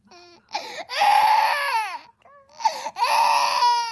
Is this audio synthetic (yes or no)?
no